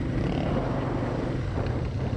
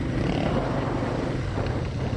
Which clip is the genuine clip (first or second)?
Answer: first